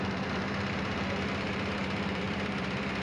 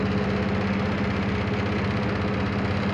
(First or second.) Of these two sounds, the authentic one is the second